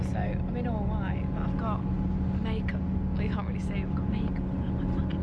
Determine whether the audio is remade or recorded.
recorded